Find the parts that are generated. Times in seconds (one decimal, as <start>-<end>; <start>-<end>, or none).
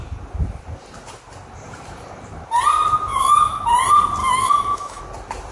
3.1-3.7; 4.2-5.0